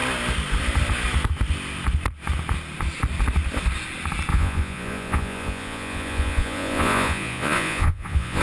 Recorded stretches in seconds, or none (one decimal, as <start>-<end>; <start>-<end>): 0.0-4.3

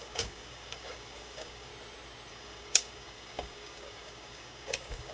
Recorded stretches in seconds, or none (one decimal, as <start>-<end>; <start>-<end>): 1.7-2.3

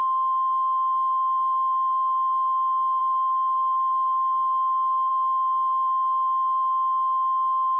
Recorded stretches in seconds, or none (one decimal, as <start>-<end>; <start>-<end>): 0.0-3.0; 5.1-7.8

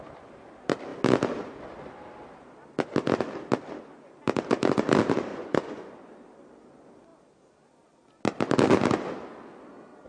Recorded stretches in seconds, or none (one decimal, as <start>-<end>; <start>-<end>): 0.0-5.3; 6.0-10.1